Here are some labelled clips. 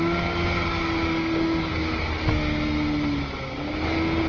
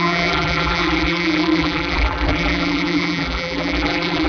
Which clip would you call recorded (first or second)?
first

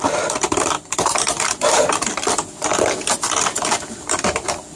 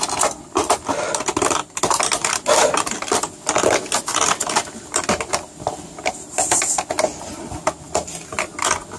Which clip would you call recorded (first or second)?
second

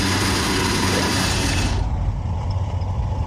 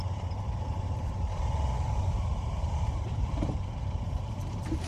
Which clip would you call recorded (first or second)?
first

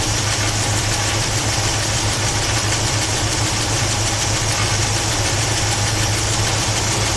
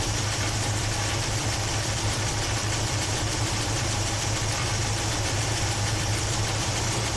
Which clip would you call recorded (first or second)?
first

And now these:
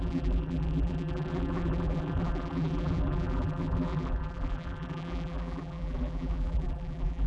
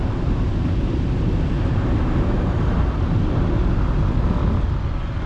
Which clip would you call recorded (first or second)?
second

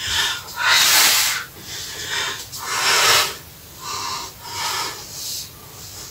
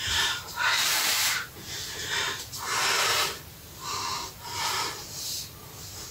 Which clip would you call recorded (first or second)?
first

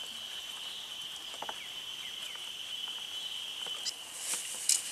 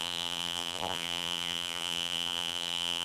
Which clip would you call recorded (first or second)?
first